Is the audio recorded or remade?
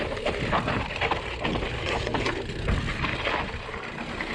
remade